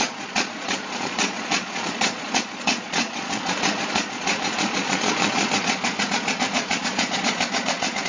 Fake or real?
fake